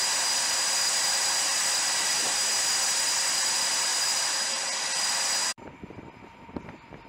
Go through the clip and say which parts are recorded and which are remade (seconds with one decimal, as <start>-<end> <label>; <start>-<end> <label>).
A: 0.0-3.9 recorded; 3.9-4.5 remade; 4.5-7.1 recorded

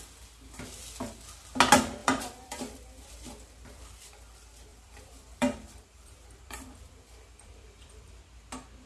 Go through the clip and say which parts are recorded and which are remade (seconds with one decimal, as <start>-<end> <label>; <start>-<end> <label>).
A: 0.0-2.0 recorded; 2.0-3.1 remade; 3.1-4.7 recorded; 4.7-8.2 remade; 8.2-8.9 recorded

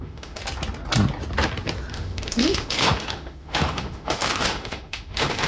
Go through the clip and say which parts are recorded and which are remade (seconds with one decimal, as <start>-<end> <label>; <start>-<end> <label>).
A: 0.0-0.4 remade; 0.4-1.9 recorded; 1.9-5.5 remade

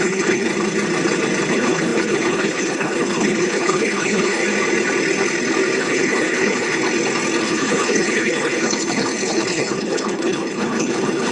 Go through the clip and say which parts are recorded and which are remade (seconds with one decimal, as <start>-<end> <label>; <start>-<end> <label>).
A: 0.0-0.5 remade; 0.5-1.5 recorded; 1.5-4.4 remade; 4.4-5.8 recorded; 5.8-6.8 remade; 6.8-7.4 recorded; 7.4-11.3 remade

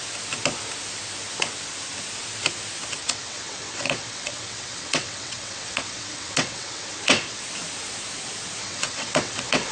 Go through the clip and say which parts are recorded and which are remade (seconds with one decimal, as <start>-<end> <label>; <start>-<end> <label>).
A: 0.0-3.0 recorded; 3.0-7.4 remade; 7.4-8.6 recorded; 8.6-9.7 remade